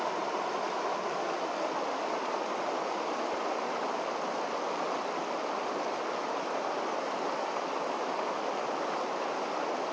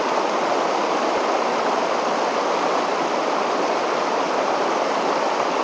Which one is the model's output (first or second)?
second